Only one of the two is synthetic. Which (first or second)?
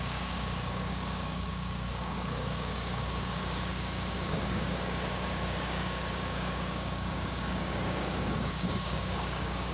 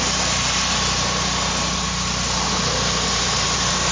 first